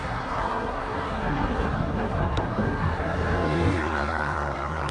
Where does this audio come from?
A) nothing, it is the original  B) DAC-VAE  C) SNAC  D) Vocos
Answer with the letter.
C